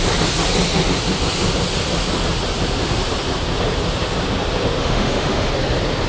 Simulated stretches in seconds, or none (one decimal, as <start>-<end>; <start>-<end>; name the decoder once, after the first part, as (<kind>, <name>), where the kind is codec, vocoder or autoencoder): 4.8-5.5 (autoencoder, DAC-VAE)

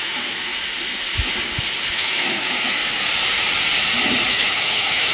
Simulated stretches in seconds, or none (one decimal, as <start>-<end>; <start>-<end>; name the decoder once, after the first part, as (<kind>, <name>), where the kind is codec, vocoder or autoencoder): 0.0-0.5 (autoencoder, DAC-VAE); 1.9-2.8; 4.3-5.1

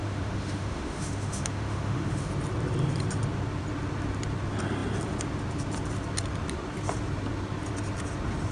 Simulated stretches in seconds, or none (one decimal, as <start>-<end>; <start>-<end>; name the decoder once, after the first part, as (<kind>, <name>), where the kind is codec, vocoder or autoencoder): 0.0-2.3 (autoencoder, DAC-VAE)

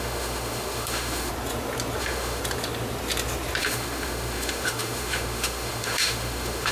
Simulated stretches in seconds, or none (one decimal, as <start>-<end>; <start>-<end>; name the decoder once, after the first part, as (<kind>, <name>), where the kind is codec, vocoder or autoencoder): 0.0-1.3 (autoencoder, DAC-VAE); 2.0-2.4; 3.6-6.7

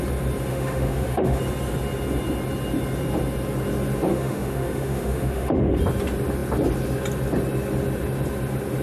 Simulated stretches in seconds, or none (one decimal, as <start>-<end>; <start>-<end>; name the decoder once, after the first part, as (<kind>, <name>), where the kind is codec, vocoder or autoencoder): 0.5-1.4 (autoencoder, DAC-VAE); 4.1-5.8